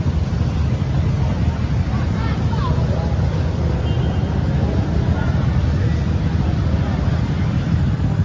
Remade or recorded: recorded